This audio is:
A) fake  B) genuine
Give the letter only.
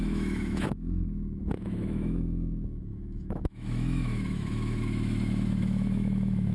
A